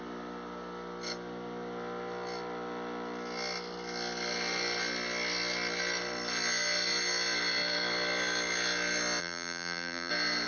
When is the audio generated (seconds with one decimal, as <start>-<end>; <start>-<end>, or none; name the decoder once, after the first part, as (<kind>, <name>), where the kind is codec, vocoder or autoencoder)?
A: 9.2-10.1 (vocoder, BigVGAN v2)